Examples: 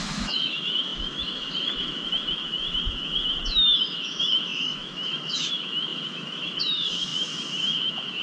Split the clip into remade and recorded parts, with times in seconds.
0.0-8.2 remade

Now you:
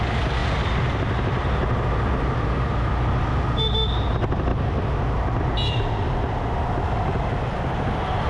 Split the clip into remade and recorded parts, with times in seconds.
0.0-8.3 recorded

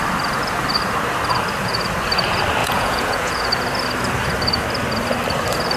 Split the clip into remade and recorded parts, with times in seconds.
0.0-2.6 recorded; 2.6-3.5 remade; 3.5-5.8 recorded

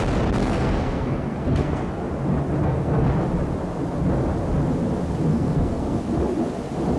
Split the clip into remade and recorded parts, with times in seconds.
0.0-0.4 recorded; 0.4-2.0 remade; 2.0-2.6 recorded; 2.6-3.1 remade; 3.1-5.3 recorded; 5.3-6.0 remade; 6.0-7.0 recorded

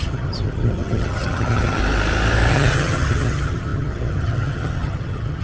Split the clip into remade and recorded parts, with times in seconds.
0.0-1.8 remade; 1.8-2.5 recorded; 2.5-5.4 remade

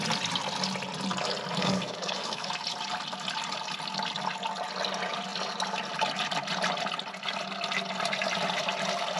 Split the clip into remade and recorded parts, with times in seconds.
0.0-1.6 recorded; 1.6-2.5 remade; 2.5-9.2 recorded

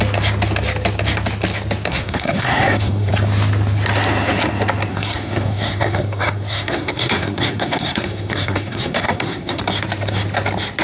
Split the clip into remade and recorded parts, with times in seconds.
0.0-1.9 recorded; 1.9-3.1 remade; 3.1-4.9 recorded; 4.9-9.6 remade; 9.6-10.8 recorded

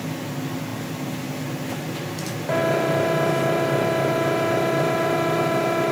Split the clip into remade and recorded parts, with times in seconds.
0.0-0.7 recorded; 0.7-1.7 remade; 1.7-2.6 recorded; 2.6-5.4 remade; 5.4-5.9 recorded